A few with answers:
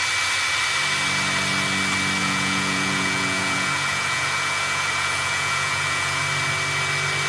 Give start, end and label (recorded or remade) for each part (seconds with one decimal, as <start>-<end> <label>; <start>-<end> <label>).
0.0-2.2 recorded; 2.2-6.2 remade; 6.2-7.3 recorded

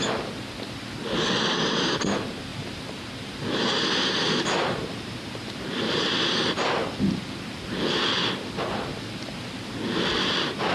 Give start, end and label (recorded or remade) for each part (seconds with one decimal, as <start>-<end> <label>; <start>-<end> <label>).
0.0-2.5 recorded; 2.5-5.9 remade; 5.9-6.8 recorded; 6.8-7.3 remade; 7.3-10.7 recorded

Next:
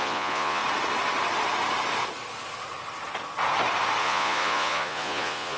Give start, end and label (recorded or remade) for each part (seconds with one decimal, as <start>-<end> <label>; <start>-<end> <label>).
0.0-0.6 remade; 0.6-4.0 recorded; 4.0-5.6 remade

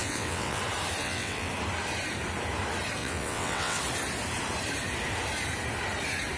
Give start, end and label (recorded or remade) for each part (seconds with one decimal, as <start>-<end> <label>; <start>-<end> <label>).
0.0-0.6 remade; 0.6-1.0 recorded; 1.0-1.5 remade; 1.5-3.0 recorded; 3.0-3.8 remade; 3.8-6.4 recorded

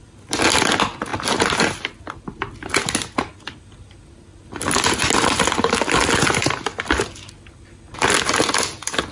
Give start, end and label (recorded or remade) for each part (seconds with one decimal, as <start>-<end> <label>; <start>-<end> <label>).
0.0-9.1 recorded